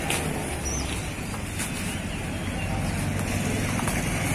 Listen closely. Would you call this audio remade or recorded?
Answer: recorded